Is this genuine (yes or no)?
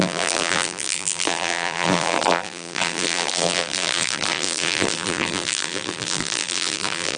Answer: no